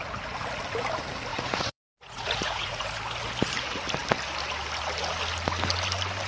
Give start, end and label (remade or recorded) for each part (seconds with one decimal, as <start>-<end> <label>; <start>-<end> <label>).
0.0-1.3 recorded; 1.3-2.8 remade; 2.8-6.3 recorded